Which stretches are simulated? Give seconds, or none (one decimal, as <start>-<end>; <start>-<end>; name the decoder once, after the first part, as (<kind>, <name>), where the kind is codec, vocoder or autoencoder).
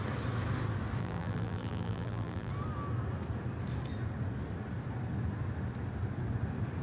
1.0-2.5 (vocoder, BigVGAN v2)